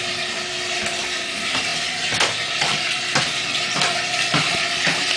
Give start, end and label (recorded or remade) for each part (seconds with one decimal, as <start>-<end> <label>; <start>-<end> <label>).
0.0-5.2 recorded